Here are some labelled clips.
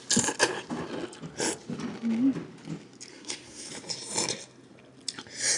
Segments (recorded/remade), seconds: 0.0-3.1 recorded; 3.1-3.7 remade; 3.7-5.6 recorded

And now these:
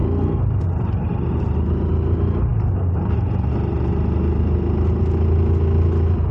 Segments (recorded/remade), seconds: 0.0-6.3 recorded

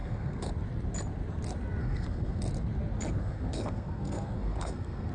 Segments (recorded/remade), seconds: 0.0-0.5 remade; 0.5-1.8 recorded; 1.8-2.4 remade; 2.4-3.2 recorded; 3.2-5.1 remade

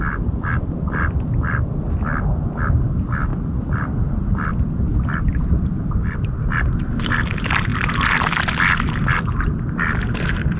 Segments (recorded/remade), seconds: 0.0-10.6 recorded

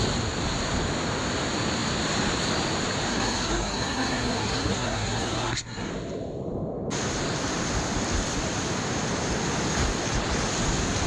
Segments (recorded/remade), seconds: 0.0-3.1 recorded; 3.1-5.9 remade; 5.9-11.1 recorded

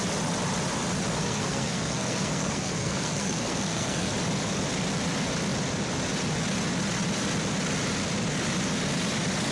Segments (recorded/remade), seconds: 0.0-1.2 recorded; 1.2-4.1 remade; 4.1-9.5 recorded

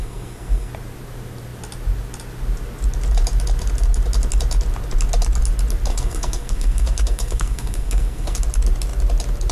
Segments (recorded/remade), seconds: 0.0-0.7 remade; 0.7-5.9 recorded; 5.9-8.4 remade; 8.4-9.5 recorded

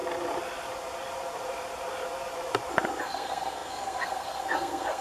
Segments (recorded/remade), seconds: 0.0-3.0 recorded; 3.0-5.0 remade